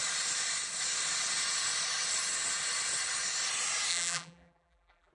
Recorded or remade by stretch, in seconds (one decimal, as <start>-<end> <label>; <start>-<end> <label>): 0.0-3.9 recorded; 3.9-5.1 remade